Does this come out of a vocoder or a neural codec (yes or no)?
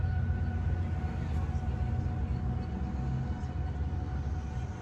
no